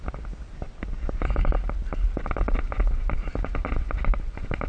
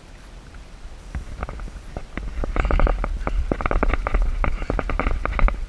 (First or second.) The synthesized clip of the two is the second